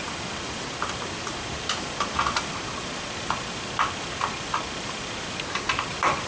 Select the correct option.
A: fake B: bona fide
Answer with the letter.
B